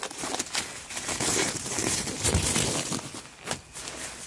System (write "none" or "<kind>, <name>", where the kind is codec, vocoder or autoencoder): none